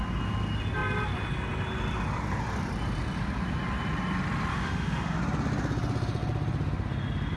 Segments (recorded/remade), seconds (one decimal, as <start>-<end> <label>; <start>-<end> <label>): 0.0-4.5 recorded; 4.5-5.2 remade; 5.2-7.4 recorded